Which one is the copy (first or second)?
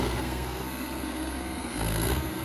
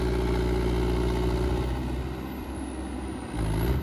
first